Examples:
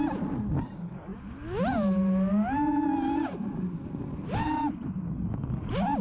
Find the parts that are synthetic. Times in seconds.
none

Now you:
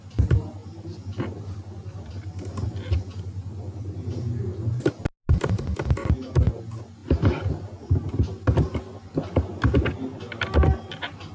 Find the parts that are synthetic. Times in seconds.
none

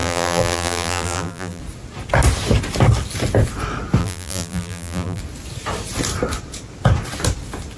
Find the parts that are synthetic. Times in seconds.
0.0-1.6 (vocoder, BigVGAN v2); 4.0-5.2

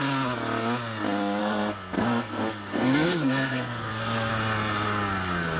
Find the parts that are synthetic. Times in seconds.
1.4-4.3 (codec, SNAC)

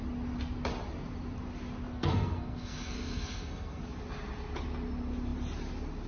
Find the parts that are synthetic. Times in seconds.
1.9-3.8 (codec, SNAC)

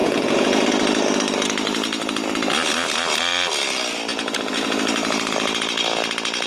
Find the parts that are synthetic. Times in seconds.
0.0-0.7 (vocoder, Vocos); 4.1-4.8

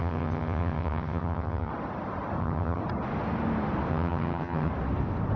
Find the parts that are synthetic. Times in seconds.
0.0-1.7 (vocoder, HiFi-GAN); 2.4-2.8; 3.9-4.7